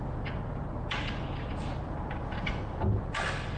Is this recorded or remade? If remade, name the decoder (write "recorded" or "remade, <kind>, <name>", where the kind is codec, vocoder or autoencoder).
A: recorded